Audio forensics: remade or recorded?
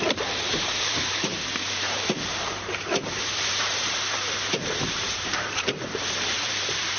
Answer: remade